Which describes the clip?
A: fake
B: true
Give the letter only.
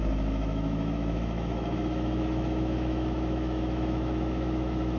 A